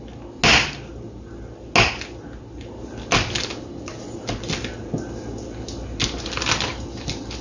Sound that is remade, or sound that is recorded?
recorded